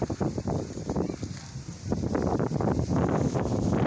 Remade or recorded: recorded